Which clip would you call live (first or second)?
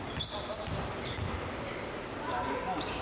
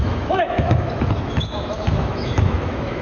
first